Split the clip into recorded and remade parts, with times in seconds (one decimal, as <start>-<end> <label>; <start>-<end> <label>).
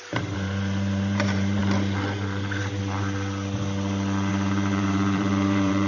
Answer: 0.0-1.6 remade; 1.6-4.3 recorded; 4.3-5.9 remade